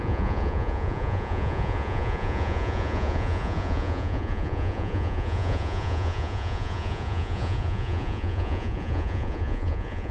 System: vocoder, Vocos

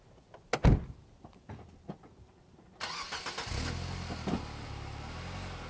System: none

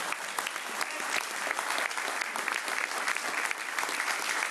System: none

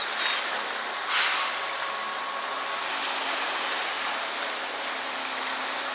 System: none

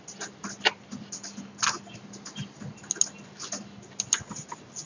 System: none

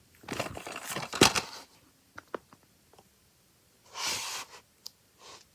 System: none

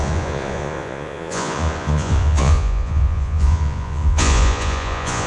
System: vocoder, Vocos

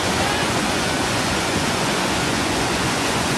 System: vocoder, Vocos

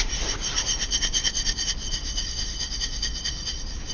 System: none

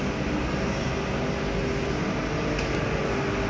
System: none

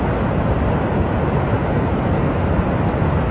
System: none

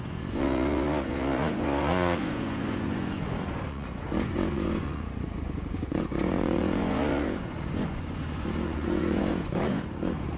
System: vocoder, Vocos